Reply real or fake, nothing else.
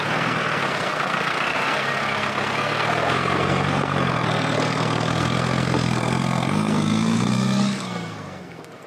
fake